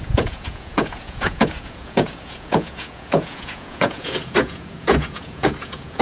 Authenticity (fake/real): fake